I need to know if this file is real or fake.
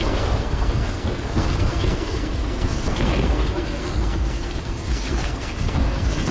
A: fake